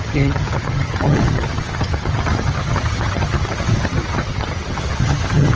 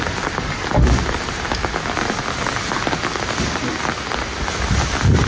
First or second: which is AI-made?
first